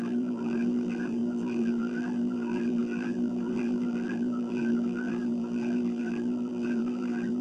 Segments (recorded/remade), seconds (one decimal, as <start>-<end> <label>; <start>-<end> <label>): 0.0-7.4 remade